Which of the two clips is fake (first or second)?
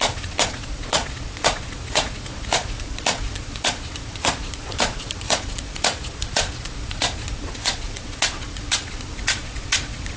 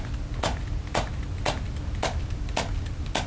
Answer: first